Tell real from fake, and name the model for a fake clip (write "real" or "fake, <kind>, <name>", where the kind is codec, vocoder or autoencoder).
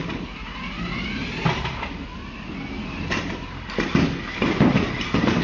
real